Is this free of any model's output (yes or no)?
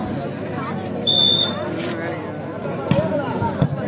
yes